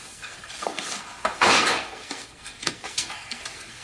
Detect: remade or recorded remade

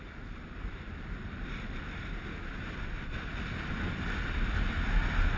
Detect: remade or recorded recorded